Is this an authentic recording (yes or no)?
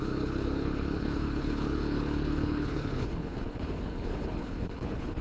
no